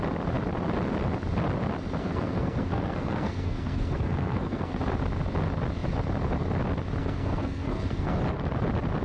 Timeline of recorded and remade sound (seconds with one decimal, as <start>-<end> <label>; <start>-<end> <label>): 0.0-2.0 recorded; 2.0-4.8 remade; 4.8-7.0 recorded; 7.0-8.2 remade; 8.2-9.0 recorded